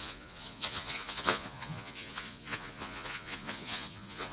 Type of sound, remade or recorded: remade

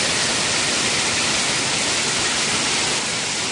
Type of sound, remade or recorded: recorded